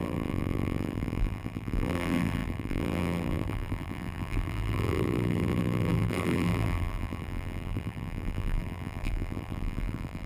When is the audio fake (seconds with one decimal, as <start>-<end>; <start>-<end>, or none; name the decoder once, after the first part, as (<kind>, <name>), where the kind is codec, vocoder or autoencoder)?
0.0-10.3 (vocoder, BigVGAN v2)